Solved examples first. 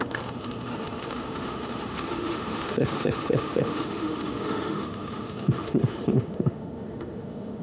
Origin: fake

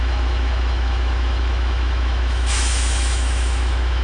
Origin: fake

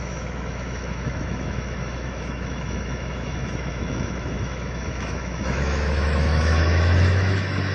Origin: fake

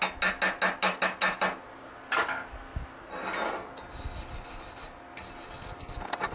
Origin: real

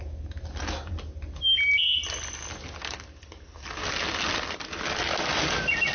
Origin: real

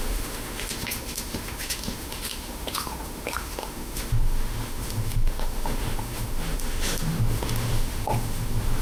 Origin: fake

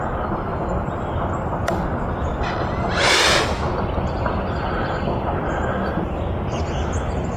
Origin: real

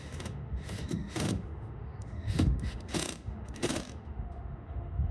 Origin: fake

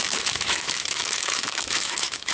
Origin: fake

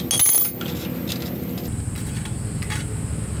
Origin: real